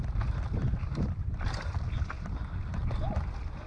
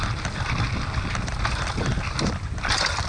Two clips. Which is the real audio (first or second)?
second